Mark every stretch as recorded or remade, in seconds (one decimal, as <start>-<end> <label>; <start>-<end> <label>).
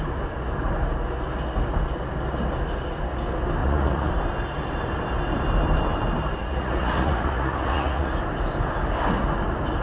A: 0.0-3.6 recorded; 3.6-4.1 remade; 4.1-6.4 recorded; 6.4-8.1 remade; 8.1-9.8 recorded